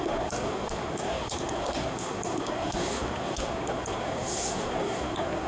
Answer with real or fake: fake